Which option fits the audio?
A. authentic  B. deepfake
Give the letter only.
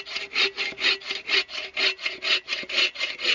A